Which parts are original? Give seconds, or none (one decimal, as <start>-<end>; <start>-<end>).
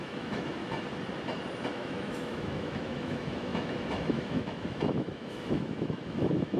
0.6-1.7